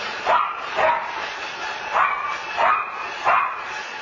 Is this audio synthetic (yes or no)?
no